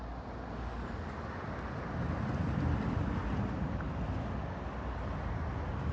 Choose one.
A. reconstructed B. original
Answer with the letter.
B